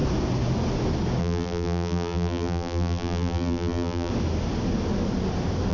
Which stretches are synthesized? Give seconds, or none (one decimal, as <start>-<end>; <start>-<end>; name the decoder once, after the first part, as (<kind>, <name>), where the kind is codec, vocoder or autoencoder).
1.2-4.1 (vocoder, BigVGAN v2)